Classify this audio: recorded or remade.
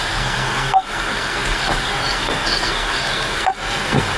remade